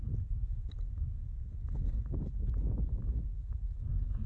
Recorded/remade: recorded